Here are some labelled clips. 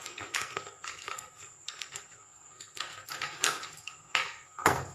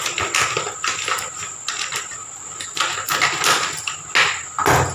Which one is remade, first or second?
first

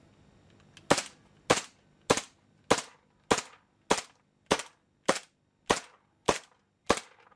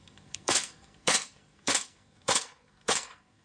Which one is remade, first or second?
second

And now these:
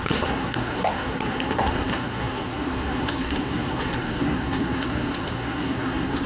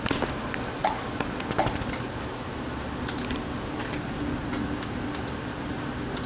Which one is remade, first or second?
first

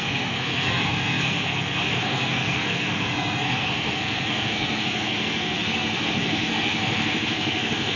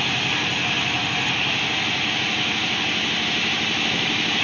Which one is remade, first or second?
first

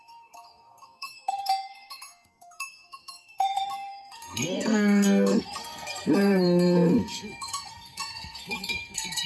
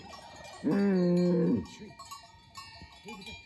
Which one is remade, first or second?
first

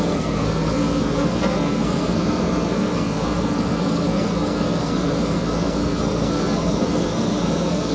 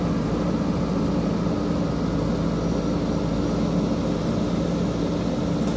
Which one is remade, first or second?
first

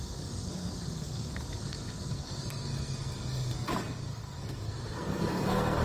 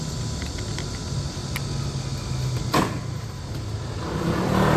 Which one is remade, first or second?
first